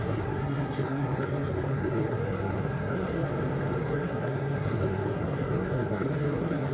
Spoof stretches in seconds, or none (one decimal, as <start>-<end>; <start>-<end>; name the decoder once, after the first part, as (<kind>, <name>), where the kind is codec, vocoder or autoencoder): 0.0-3.3 (codec, SNAC); 3.8-6.7